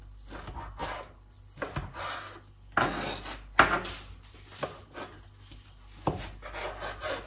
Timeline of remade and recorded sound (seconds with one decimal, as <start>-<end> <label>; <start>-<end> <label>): 0.0-7.3 recorded